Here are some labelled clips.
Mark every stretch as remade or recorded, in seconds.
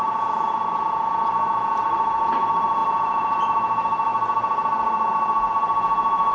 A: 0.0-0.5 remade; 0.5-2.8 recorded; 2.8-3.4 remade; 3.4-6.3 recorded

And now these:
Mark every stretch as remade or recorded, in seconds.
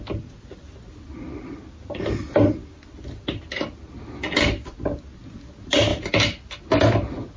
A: 0.0-7.4 recorded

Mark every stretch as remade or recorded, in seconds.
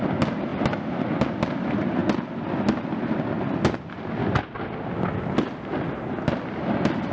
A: 0.0-7.1 recorded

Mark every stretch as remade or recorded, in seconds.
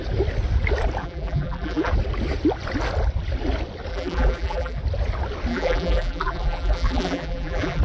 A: 0.0-1.0 recorded; 1.0-1.9 remade; 1.9-3.9 recorded; 3.9-4.8 remade; 4.8-5.5 recorded; 5.5-7.8 remade